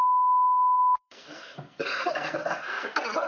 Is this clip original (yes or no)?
no